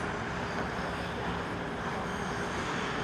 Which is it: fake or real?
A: real